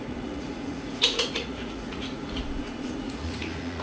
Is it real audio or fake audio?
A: fake